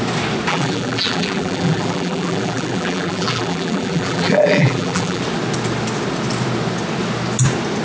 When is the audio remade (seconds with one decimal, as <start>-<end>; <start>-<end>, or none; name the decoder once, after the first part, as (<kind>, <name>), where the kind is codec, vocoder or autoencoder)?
0.5-5.2 (vocoder, BigVGAN v2)